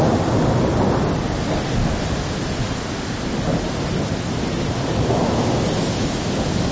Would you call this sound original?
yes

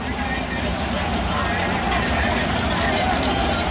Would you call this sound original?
yes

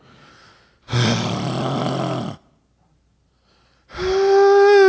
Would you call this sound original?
yes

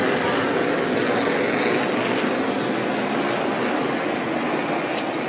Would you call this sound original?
yes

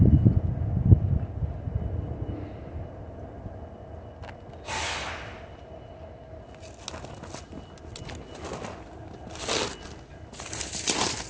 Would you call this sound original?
yes